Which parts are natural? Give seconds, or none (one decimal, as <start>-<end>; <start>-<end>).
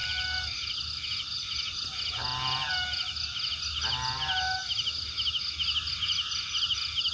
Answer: 0.0-7.1